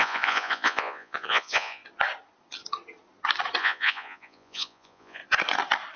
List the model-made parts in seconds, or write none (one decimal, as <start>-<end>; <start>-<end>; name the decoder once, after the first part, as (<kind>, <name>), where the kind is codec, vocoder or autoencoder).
0.0-1.8 (vocoder, Vocos); 3.6-5.2